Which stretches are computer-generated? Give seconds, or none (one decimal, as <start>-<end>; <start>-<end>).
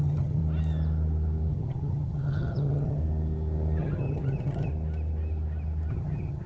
0.0-0.4; 1.5-3.0; 3.8-4.7; 5.9-6.5